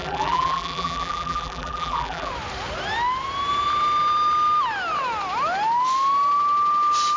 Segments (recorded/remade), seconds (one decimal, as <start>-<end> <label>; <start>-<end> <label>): 0.0-2.3 remade; 2.3-7.2 recorded